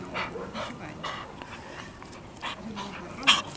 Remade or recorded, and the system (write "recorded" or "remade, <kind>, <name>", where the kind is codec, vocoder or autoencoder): recorded